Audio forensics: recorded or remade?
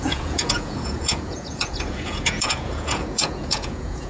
remade